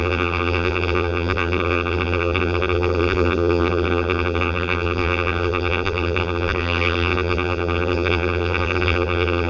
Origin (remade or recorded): remade